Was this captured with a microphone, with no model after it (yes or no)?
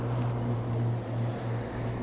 yes